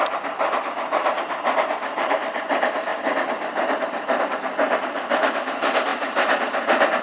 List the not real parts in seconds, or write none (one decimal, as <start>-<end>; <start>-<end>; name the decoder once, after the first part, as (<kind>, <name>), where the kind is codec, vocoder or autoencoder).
2.9-4.2 (vocoder, BigVGAN v2); 5.9-7.0